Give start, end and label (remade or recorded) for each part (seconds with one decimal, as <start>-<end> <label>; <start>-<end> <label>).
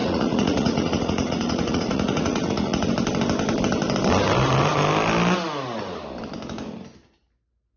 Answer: 0.0-2.9 remade; 2.9-7.8 recorded